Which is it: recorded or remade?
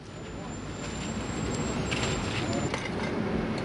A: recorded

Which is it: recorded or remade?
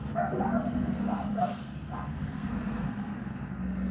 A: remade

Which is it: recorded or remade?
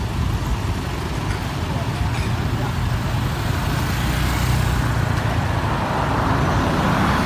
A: recorded